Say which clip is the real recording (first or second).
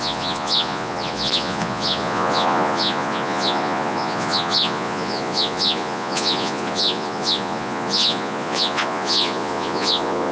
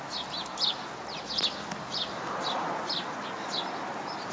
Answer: second